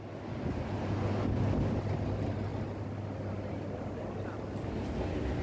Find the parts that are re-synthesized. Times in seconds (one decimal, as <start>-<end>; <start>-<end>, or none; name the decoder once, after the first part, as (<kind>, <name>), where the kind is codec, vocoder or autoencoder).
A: none